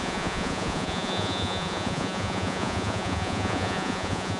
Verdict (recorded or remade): remade